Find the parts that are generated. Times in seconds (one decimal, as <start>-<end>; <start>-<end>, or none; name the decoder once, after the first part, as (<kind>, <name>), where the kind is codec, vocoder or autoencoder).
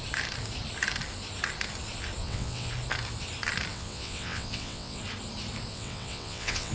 2.2-2.7 (vocoder, WaveNeXt); 3.7-5.0; 5.7-6.7